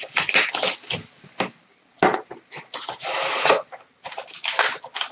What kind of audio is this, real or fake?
real